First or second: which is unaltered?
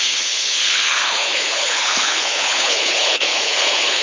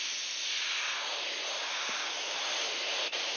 second